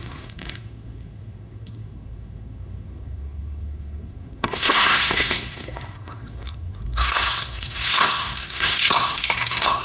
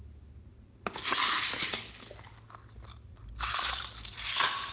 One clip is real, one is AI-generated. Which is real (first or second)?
second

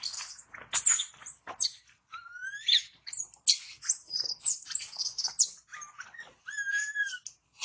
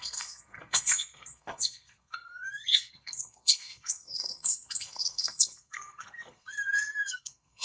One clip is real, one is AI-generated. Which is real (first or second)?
first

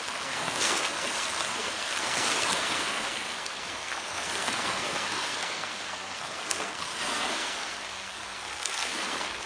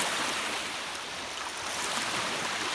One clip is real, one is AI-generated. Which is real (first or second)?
second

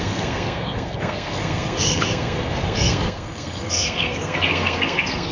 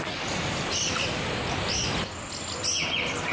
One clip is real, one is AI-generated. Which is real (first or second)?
second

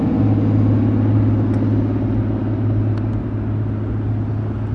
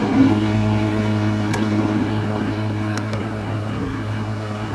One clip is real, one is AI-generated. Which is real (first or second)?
first